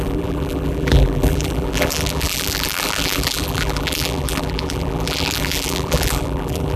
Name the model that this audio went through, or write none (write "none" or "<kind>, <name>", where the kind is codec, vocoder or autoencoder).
vocoder, BigVGAN v2